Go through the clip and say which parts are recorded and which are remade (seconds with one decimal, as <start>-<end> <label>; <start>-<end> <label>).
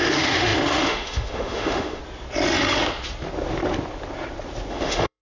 0.0-2.0 remade; 2.0-4.7 recorded; 4.7-5.2 remade